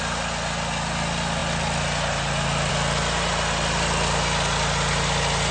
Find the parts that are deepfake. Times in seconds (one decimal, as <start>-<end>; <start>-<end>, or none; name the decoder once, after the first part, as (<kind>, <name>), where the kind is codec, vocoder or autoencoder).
none